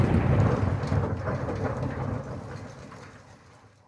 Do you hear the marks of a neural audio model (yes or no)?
no